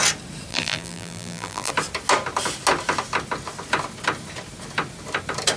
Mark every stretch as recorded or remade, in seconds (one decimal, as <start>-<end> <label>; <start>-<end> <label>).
0.0-0.5 recorded; 0.5-1.7 remade; 1.7-5.6 recorded